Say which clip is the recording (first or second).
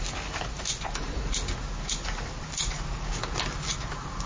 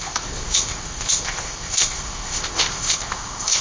first